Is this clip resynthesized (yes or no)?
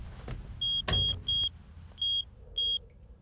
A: no